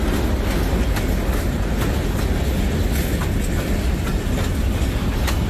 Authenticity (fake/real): real